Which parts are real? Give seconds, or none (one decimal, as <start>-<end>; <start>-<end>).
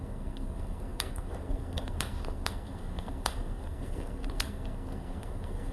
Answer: none